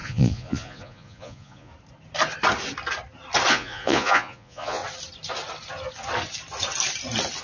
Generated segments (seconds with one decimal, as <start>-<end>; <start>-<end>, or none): 0.0-1.7; 3.5-4.8